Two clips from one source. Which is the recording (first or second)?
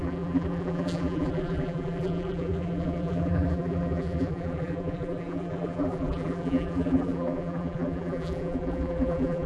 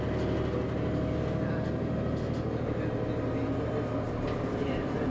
second